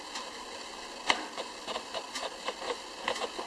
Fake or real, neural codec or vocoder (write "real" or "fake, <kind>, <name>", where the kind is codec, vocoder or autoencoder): real